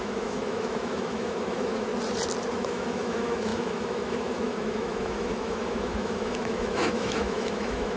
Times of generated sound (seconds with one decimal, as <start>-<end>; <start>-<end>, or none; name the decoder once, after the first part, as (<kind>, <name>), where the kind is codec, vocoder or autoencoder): 0.0-1.9 (autoencoder, DAC-VAE); 2.5-8.0